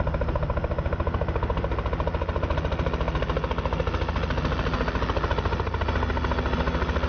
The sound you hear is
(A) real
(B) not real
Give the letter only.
A